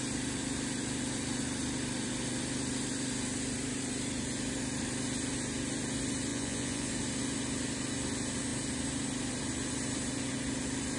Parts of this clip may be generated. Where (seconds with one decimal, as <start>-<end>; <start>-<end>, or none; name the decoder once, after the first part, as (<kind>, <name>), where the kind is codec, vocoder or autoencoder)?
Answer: 6.3-6.9 (vocoder, Vocos)